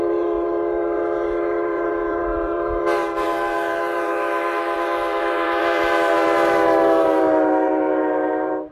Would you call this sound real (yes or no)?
no